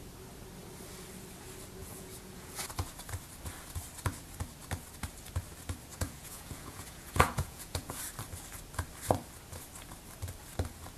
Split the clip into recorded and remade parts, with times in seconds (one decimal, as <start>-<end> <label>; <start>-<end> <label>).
0.0-1.8 recorded; 1.8-2.5 remade; 2.5-5.9 recorded; 5.9-8.0 remade; 8.0-11.0 recorded